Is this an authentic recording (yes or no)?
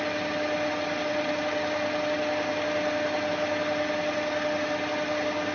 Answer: yes